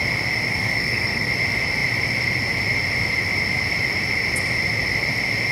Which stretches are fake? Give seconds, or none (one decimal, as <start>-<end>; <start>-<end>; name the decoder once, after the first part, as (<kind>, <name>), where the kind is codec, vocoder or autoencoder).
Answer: 0.5-1.3 (codec, SNAC)